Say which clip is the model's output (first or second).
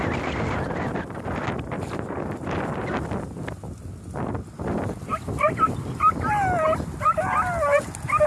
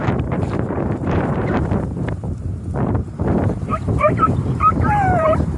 second